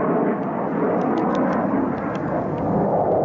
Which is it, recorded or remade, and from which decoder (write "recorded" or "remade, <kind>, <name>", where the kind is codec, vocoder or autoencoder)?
recorded